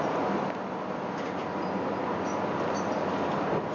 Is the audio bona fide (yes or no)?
no